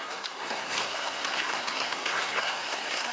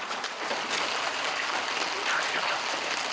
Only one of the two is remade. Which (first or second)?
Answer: first